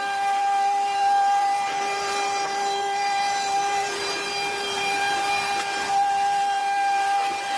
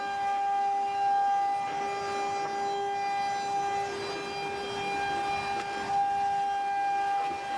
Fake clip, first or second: first